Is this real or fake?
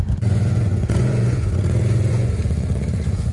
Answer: fake